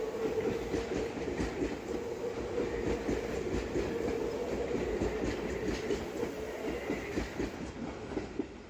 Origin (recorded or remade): recorded